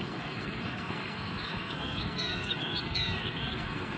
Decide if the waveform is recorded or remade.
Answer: remade